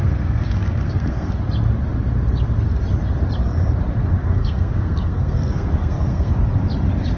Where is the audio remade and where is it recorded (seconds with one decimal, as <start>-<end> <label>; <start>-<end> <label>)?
0.0-1.4 remade; 1.4-4.2 recorded; 4.2-6.3 remade; 6.3-7.2 recorded